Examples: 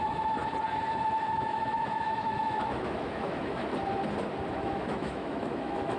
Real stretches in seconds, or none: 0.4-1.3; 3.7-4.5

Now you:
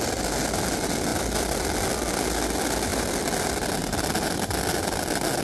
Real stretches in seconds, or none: 0.0-1.1; 1.8-2.9